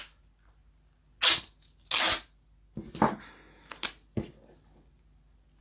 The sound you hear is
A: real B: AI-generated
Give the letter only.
A